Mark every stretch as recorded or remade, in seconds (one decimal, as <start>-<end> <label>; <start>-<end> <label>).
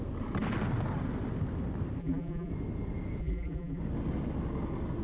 0.0-2.0 recorded; 2.0-2.5 remade; 2.5-3.2 recorded; 3.2-3.8 remade; 3.8-5.0 recorded